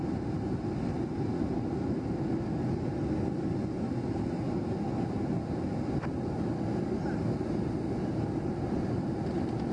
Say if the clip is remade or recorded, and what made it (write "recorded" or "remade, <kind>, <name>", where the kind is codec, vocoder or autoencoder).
recorded